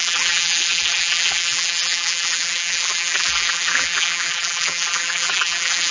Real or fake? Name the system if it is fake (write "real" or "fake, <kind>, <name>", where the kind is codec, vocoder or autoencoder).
fake, vocoder, BigVGAN v2